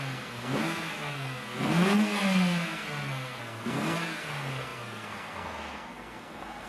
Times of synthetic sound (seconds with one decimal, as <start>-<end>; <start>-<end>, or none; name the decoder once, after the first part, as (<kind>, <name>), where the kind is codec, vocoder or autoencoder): 0.0-6.7 (codec, SNAC)